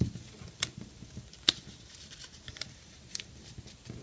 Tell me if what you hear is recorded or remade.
remade